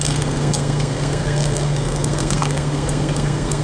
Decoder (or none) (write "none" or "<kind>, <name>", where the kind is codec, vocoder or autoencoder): codec, SNAC